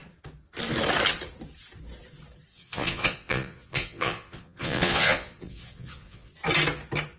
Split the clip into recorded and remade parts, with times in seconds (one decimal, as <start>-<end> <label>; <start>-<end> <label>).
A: 0.0-2.5 recorded; 2.5-6.3 remade; 6.3-7.2 recorded